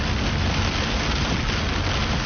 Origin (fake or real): real